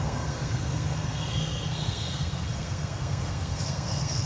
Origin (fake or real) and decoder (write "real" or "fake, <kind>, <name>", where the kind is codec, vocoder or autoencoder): fake, codec, SNAC